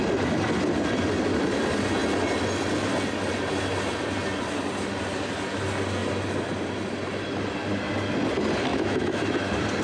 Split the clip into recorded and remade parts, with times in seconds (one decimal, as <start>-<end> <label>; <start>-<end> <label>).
0.0-8.7 recorded; 8.7-9.2 remade; 9.2-9.8 recorded